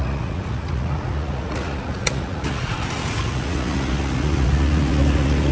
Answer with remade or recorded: remade